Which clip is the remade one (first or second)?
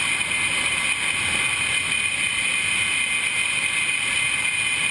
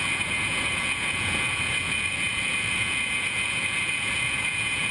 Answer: second